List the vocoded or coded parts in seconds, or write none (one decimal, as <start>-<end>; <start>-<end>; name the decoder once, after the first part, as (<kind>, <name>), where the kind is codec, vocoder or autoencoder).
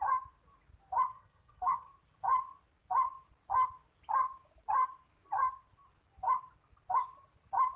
1.1-1.9 (codec, SNAC)